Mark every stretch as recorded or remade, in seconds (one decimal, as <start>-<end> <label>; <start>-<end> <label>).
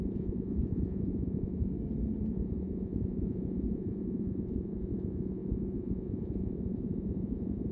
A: 0.0-1.7 remade; 1.7-2.3 recorded; 2.3-7.7 remade